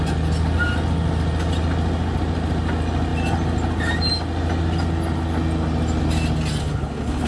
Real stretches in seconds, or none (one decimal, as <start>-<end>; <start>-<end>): 0.0-6.6